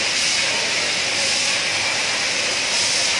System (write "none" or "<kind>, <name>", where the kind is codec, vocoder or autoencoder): none